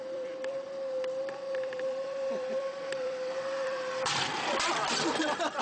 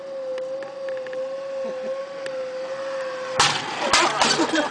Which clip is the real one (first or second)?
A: second